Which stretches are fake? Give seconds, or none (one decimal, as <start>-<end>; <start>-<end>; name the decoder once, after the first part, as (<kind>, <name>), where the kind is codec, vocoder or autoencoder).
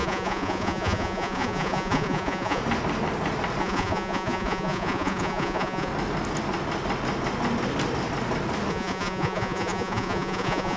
0.0-2.6 (vocoder, Vocos); 3.6-5.9; 8.7-10.8